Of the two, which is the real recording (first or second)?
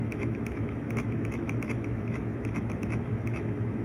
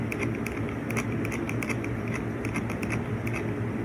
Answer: second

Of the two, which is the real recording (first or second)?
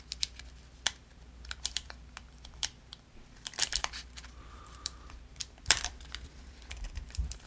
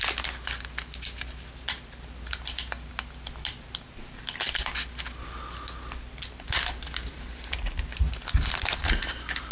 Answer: second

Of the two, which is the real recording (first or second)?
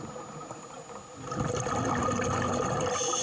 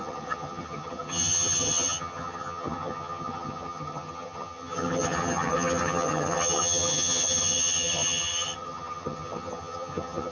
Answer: first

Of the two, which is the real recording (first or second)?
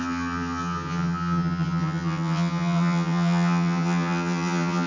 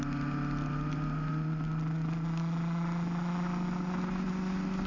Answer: second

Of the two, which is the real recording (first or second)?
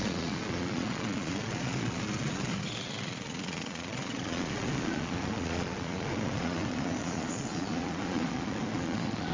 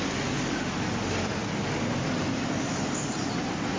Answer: second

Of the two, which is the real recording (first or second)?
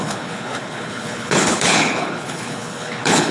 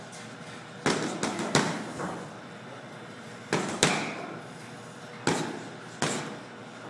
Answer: second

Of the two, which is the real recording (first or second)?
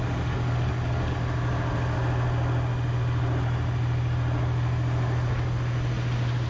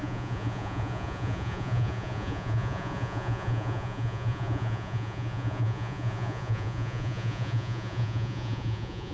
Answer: first